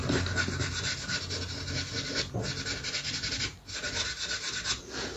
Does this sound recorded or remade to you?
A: recorded